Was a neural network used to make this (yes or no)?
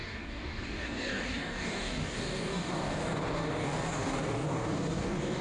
yes